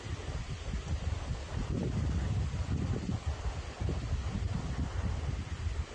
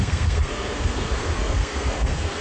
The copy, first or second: second